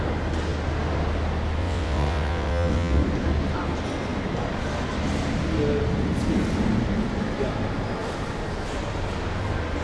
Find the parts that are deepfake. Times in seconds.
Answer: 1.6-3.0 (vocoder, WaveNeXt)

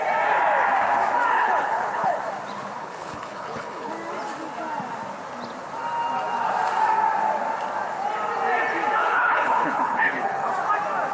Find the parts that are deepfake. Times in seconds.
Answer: 1.3-2.2 (codec, HILCodec); 2.8-3.9; 9.0-10.5